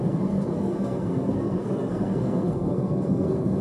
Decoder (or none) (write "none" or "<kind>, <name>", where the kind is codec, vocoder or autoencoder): codec, SNAC